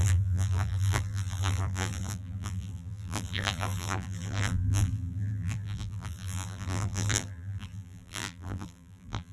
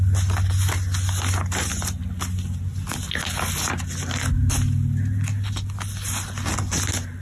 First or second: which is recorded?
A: second